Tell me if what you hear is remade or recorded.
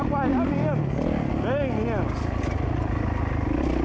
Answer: recorded